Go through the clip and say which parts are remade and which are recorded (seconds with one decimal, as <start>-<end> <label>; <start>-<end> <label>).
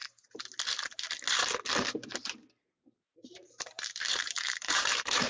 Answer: 0.0-3.2 recorded; 3.2-5.3 remade